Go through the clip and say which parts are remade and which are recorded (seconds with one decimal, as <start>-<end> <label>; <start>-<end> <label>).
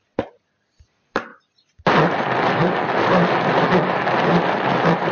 0.0-5.1 recorded